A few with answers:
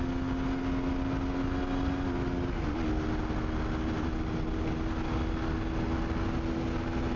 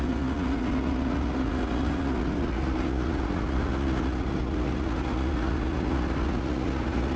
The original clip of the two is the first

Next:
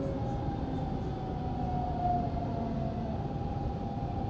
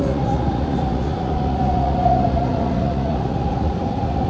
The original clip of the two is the first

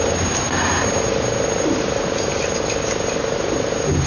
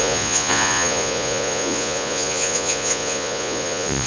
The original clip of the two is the first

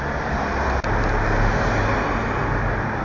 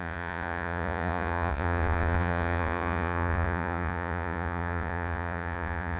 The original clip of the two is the first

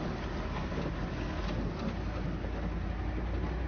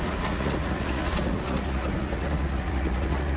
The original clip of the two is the first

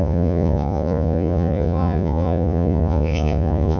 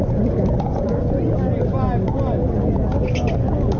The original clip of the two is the second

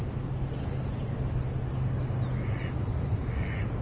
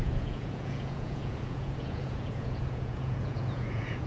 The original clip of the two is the first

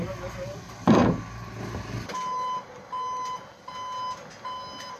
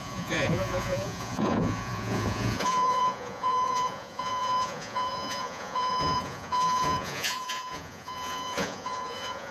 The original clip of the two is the first